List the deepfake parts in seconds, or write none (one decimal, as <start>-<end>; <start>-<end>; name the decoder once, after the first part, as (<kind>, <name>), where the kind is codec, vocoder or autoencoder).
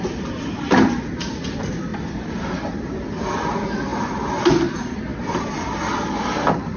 1.9-2.6 (vocoder, BigVGAN v2); 5.1-6.8